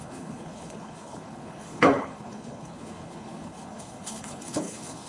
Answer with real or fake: fake